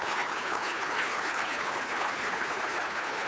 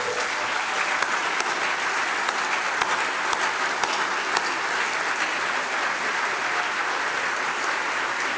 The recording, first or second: second